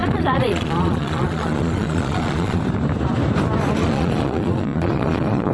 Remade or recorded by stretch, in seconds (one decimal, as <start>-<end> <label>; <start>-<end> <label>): 0.0-2.6 remade; 2.6-3.8 recorded; 3.8-5.5 remade